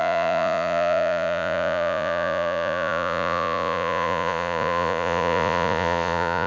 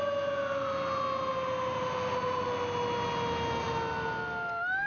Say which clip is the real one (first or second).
second